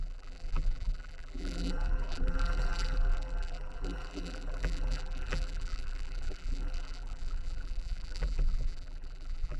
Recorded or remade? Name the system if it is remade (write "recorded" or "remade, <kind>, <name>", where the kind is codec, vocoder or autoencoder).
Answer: remade, vocoder, BigVGAN v2